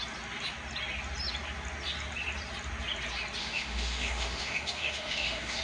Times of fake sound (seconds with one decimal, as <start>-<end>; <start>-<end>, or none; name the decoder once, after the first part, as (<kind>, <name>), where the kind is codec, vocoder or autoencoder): 3.4-5.6 (autoencoder, DAC-VAE)